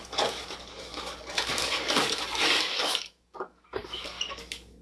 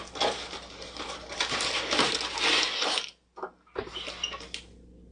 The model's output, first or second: first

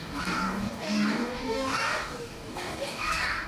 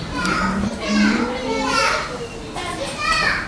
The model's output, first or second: first